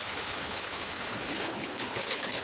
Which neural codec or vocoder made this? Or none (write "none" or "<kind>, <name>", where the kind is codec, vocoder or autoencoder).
codec, HILCodec